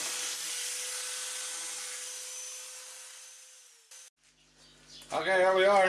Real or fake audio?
real